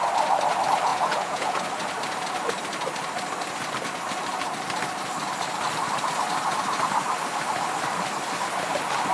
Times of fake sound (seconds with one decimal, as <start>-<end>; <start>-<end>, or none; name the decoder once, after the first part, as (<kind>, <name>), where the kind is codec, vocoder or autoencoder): 0.9-1.6 (vocoder, Vocos)